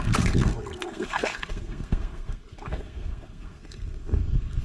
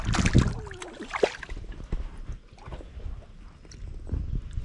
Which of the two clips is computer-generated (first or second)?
first